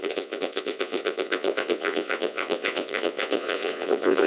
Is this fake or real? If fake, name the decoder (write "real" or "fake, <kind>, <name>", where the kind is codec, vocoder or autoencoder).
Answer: fake, vocoder, Vocos